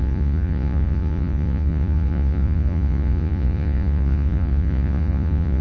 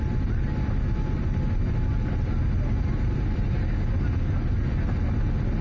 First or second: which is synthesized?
first